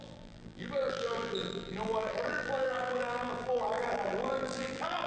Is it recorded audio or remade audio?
remade